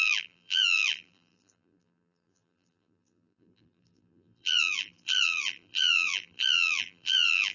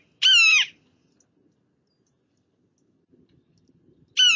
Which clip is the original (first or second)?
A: second